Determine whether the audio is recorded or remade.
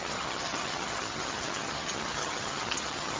remade